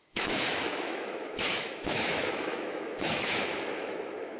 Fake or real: fake